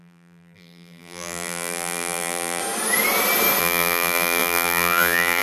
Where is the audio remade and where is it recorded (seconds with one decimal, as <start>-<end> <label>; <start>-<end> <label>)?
0.0-2.6 remade; 2.6-3.6 recorded; 3.6-5.4 remade